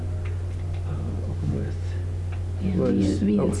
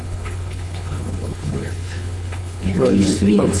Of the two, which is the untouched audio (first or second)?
first